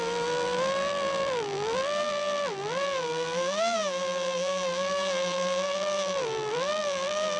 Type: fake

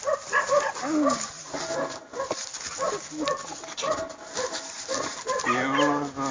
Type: real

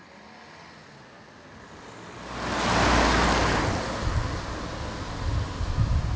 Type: real